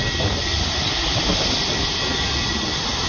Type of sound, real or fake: real